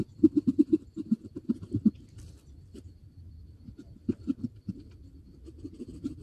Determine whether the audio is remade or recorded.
recorded